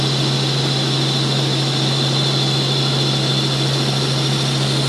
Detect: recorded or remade recorded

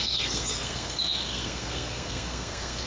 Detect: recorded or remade remade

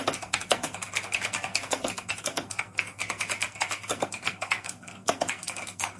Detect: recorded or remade remade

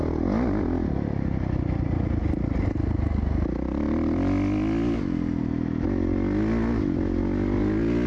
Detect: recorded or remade recorded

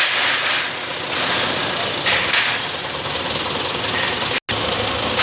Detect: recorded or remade recorded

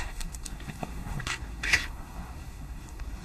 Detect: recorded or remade remade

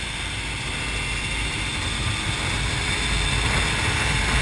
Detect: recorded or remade recorded